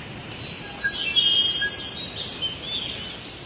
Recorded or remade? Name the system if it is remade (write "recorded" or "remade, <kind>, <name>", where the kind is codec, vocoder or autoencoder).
recorded